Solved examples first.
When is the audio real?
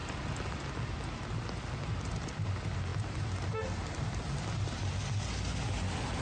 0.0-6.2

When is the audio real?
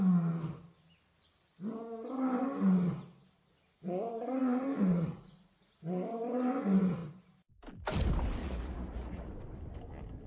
0.0-4.4; 5.7-8.4; 9.3-10.3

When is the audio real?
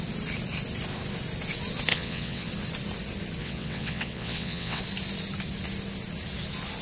0.0-1.9; 2.5-3.4; 4.8-6.8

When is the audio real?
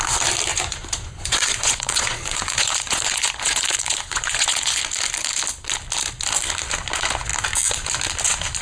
0.0-0.5; 4.8-8.6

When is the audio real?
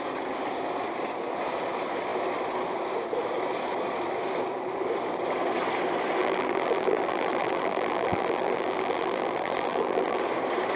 0.0-6.2; 10.2-10.8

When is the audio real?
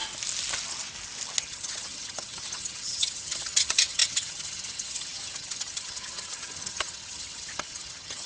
0.0-1.4